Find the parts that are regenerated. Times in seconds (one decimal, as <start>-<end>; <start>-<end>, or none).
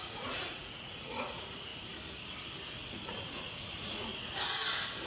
0.0-1.7; 2.9-4.1